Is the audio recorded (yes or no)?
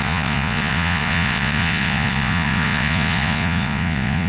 no